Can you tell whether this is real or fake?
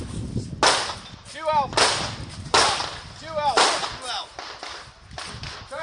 real